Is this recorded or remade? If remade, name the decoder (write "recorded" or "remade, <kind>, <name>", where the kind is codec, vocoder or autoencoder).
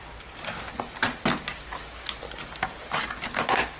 recorded